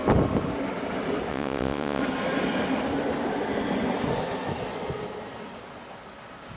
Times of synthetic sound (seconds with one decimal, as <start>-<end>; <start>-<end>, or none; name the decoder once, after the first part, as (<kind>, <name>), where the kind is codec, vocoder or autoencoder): 1.3-2.0 (vocoder, WaveNeXt)